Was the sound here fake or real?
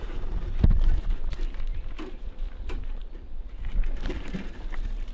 fake